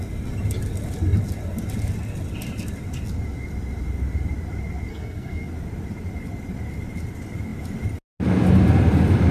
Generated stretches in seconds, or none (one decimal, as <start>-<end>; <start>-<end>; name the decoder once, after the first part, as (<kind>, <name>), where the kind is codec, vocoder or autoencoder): 4.9-5.5 (codec, SNAC)